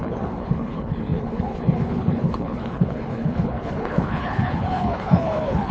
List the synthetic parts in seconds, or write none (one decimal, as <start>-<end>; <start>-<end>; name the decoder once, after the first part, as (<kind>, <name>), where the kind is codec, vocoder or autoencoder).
0.0-5.7 (codec, HILCodec)